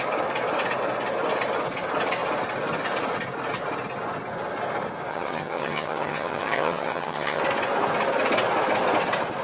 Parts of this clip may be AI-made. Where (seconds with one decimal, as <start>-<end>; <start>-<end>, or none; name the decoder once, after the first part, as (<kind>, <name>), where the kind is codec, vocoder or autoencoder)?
5.1-7.4 (vocoder, HiFi-GAN)